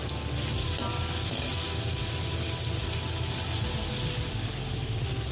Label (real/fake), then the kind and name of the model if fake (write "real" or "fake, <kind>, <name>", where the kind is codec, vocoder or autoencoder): real